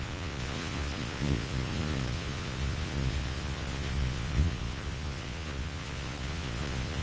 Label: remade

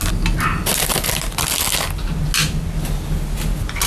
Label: recorded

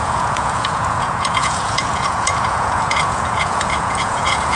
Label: remade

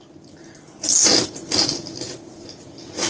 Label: recorded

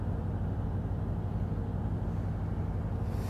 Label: recorded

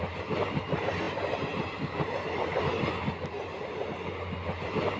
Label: recorded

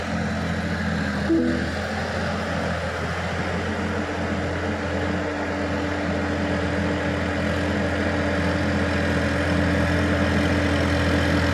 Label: recorded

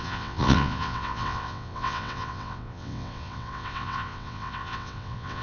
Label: remade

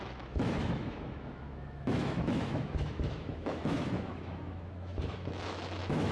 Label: remade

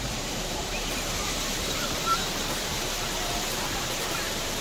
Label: remade